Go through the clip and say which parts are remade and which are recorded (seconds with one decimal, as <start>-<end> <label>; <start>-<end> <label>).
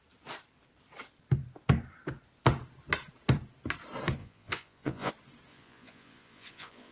0.0-4.2 recorded; 4.2-5.1 remade; 5.1-5.5 recorded; 5.5-6.9 remade